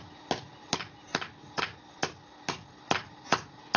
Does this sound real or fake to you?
real